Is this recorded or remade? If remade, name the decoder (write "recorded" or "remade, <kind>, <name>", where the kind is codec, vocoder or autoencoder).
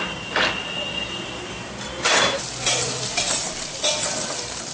recorded